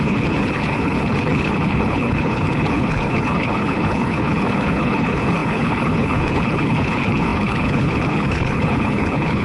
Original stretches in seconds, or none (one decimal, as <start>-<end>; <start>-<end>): none